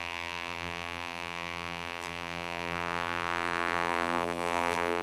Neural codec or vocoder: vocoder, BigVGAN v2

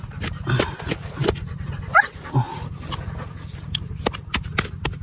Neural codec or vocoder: none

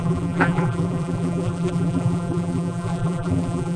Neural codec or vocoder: vocoder, BigVGAN v2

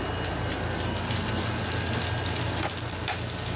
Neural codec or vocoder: none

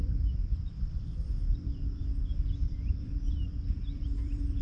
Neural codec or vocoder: vocoder, BigVGAN v2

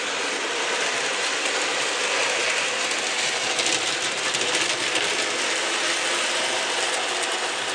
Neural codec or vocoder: vocoder, BigVGAN v2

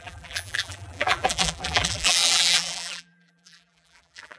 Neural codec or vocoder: vocoder, BigVGAN v2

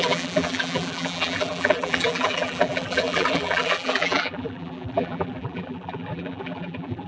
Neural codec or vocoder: vocoder, BigVGAN v2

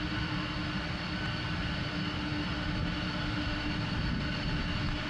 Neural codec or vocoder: none